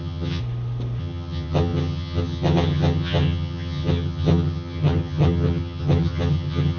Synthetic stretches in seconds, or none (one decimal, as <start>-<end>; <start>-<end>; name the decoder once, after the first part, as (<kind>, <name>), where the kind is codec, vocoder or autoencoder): 0.0-0.4 (vocoder, HiFi-GAN); 1.0-6.8